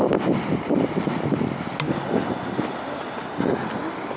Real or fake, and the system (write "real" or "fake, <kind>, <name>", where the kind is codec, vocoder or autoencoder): real